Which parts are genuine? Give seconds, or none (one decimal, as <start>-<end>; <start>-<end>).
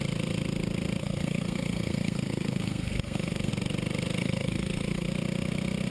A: 0.0-1.0; 3.5-4.2; 5.1-5.9